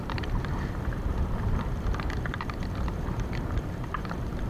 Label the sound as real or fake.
fake